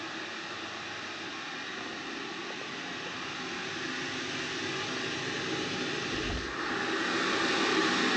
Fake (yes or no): no